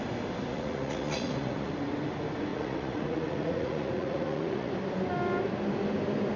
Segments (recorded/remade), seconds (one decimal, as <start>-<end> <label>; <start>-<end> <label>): 0.0-0.5 recorded; 0.5-1.7 remade; 1.7-2.5 recorded; 2.5-4.7 remade; 4.7-6.4 recorded